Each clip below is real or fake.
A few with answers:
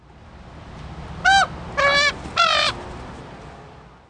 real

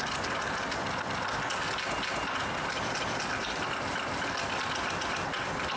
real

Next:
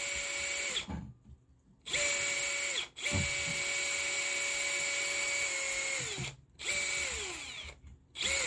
real